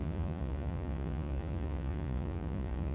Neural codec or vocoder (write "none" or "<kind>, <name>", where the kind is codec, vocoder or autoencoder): vocoder, Vocos